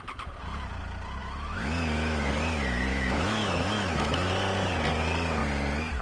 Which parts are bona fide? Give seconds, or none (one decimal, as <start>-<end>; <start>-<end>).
0.0-1.2; 2.3-2.9; 4.3-6.0